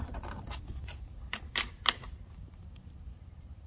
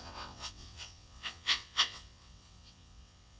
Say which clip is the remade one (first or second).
second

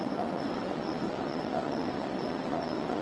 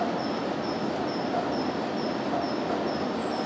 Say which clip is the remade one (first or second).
first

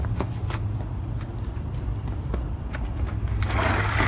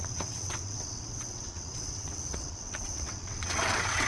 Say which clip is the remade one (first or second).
second